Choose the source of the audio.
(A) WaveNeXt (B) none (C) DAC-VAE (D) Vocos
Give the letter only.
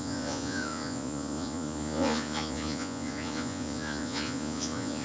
D